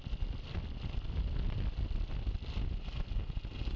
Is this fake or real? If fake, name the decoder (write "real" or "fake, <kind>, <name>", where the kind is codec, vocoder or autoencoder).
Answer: real